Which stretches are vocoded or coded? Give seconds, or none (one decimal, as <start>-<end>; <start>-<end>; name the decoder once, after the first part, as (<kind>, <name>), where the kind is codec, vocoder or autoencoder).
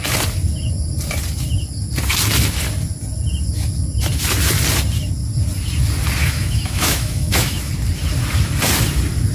6.2-7.7 (autoencoder, DAC-VAE)